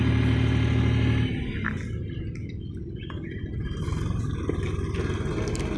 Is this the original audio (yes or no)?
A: yes